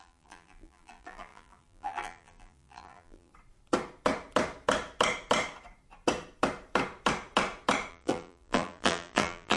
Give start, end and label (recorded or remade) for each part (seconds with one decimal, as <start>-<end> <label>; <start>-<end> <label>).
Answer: 0.0-3.3 remade; 3.3-7.9 recorded; 7.9-9.6 remade